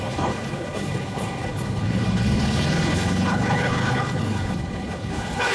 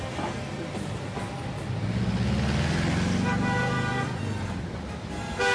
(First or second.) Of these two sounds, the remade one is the first